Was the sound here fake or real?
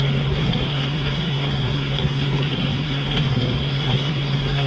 fake